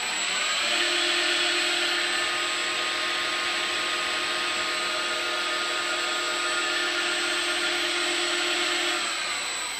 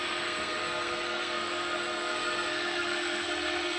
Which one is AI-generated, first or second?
second